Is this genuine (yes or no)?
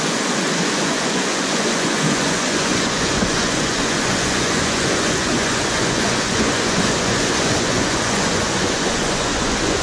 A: no